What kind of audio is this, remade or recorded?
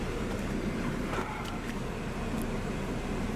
remade